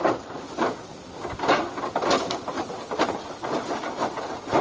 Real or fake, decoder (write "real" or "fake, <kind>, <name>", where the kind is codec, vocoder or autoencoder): real